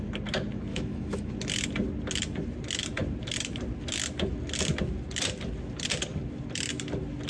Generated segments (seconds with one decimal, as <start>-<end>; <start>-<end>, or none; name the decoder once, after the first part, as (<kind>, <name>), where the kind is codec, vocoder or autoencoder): 0.7-1.3 (autoencoder, DAC-VAE)